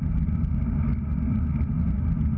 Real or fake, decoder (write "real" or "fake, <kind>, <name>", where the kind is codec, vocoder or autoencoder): real